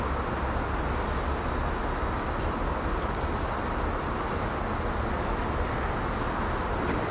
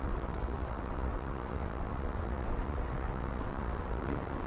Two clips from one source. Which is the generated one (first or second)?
second